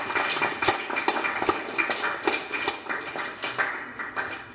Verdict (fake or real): real